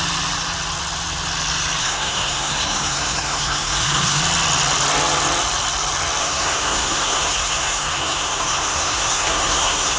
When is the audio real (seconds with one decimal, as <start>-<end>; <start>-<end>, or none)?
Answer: 0.0-1.8; 4.2-6.2